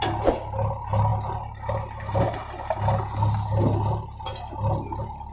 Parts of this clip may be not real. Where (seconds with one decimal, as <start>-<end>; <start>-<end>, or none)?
none